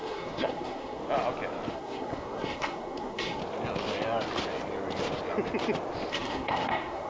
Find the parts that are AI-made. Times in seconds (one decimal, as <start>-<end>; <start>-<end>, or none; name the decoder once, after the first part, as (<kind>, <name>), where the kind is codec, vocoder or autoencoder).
0.0-1.0 (codec, SNAC); 1.7-3.4; 6.1-7.1